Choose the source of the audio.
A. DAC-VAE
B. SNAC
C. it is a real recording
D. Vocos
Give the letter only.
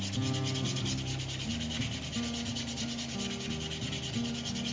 C